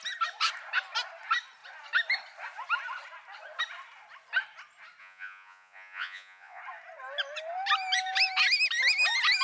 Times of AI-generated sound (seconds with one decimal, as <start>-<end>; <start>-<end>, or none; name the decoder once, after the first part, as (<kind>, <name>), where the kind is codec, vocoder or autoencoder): 5.0-6.6 (vocoder, Vocos)